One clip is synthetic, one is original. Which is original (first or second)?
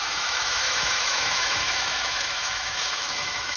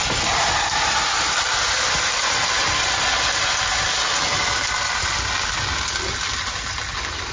second